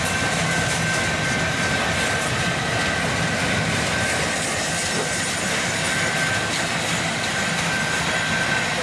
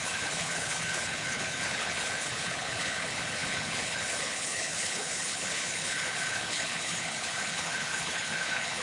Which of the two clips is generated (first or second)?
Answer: second